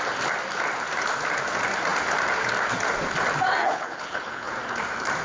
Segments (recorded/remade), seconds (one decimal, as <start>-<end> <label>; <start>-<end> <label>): 0.0-3.6 recorded; 3.6-4.5 remade; 4.5-5.2 recorded